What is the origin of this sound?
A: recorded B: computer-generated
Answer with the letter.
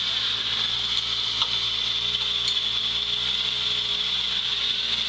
A